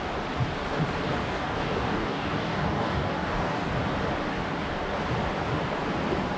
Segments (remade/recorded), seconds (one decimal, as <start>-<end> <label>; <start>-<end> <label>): 0.0-1.2 recorded; 1.2-3.8 remade; 3.8-6.4 recorded